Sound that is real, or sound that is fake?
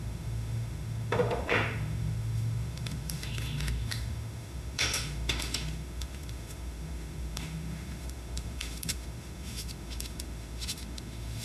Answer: fake